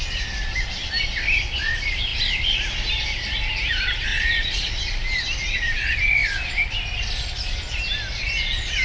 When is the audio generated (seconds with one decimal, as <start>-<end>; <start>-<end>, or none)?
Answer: 4.1-4.7

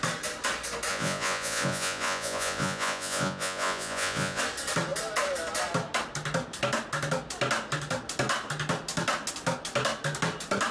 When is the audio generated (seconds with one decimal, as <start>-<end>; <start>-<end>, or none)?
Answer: 0.9-4.4

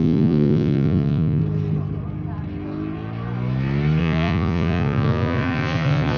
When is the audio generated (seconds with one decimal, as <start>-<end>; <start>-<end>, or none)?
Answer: 0.0-1.4; 4.0-6.2

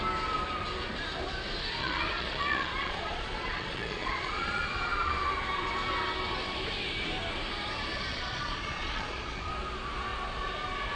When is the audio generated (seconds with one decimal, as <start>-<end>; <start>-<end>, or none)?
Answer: 1.8-5.1; 8.1-9.5

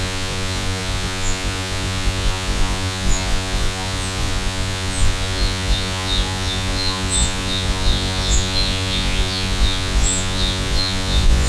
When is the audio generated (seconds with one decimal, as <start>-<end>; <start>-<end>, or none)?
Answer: 0.0-11.5

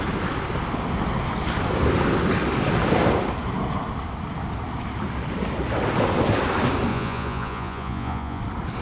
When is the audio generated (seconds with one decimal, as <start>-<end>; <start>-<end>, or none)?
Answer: 6.9-8.4

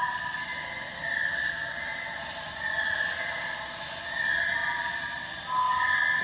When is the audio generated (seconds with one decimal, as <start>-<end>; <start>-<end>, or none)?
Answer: none

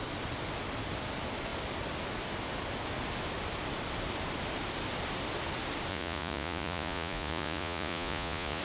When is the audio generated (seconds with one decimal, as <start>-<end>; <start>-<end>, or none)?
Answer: 5.9-8.6